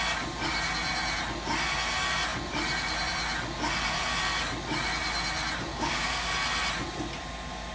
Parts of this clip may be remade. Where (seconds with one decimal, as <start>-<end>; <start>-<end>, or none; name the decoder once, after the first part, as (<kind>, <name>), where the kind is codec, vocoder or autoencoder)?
5.7-6.3 (codec, DAC)